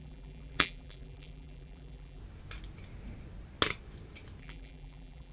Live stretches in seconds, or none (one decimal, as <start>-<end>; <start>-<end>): 2.2-4.4